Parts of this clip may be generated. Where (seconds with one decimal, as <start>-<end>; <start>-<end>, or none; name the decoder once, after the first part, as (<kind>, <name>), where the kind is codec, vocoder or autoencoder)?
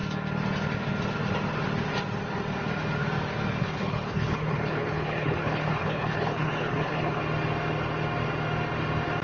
3.6-7.2 (codec, HILCodec)